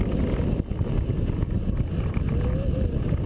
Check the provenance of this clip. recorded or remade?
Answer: recorded